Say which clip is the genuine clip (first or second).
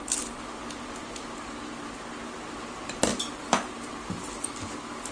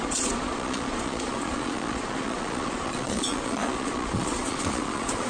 first